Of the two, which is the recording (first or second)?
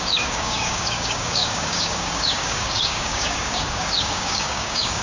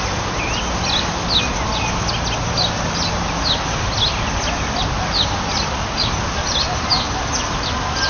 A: second